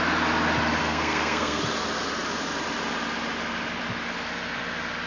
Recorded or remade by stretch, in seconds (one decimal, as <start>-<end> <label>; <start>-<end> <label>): 0.0-0.8 recorded; 0.8-1.6 remade; 1.6-5.1 recorded